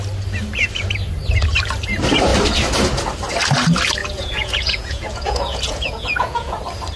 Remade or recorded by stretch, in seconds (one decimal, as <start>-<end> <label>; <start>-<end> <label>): 0.0-4.0 recorded; 4.0-6.6 remade; 6.6-7.0 recorded